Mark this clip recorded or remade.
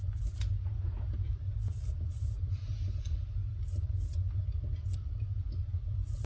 recorded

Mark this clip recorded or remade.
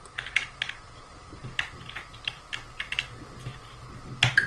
recorded